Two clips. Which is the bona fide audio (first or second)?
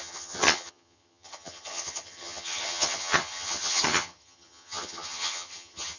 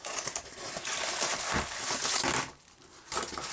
second